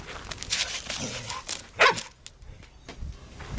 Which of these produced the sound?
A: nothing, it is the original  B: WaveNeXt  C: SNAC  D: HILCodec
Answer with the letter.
A